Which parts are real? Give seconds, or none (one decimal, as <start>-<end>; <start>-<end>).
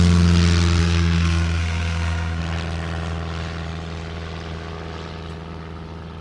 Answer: 0.0-0.8; 2.4-6.2